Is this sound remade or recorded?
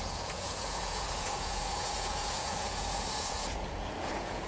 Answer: remade